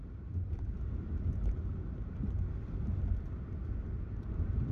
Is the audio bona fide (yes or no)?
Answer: yes